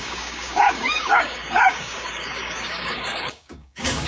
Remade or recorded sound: remade